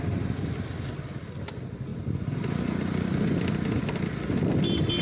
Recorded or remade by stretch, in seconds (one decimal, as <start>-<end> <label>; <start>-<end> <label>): 0.0-1.9 recorded; 1.9-3.8 remade; 3.8-5.0 recorded